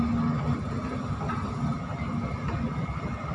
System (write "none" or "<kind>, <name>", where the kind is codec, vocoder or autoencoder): none